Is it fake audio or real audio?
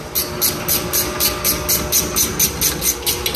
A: real